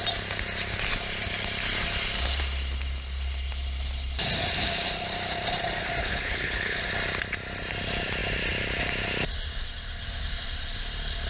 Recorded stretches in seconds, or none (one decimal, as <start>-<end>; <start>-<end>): 0.0-6.0; 6.9-11.3